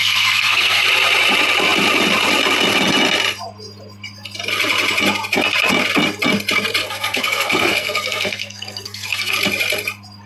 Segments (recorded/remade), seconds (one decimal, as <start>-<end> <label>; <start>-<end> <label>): 0.0-0.8 remade; 0.8-6.8 recorded; 6.8-9.3 remade; 9.3-10.3 recorded